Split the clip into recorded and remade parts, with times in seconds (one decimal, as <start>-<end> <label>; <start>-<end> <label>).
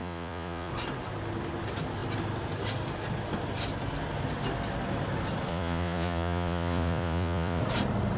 0.0-0.7 remade; 0.7-5.5 recorded; 5.5-7.6 remade; 7.6-8.2 recorded